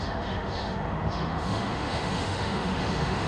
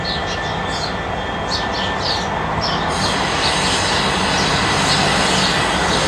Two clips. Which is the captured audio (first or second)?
second